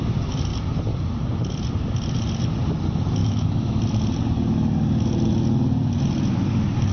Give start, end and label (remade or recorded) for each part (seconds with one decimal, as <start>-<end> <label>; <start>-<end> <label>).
0.0-3.2 recorded; 3.2-3.8 remade; 3.8-6.9 recorded